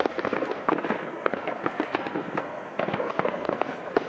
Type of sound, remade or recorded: remade